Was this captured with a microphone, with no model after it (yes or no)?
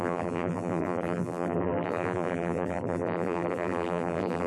no